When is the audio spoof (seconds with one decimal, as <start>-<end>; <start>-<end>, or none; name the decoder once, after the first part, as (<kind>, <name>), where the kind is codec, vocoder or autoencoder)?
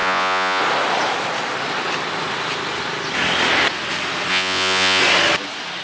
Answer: 0.0-0.6 (vocoder, Vocos); 4.3-5.0